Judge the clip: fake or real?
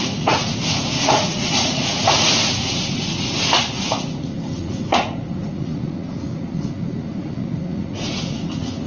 fake